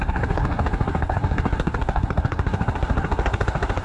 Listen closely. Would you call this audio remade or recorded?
remade